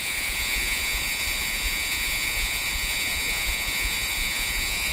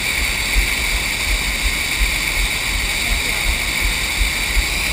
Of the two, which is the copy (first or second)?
first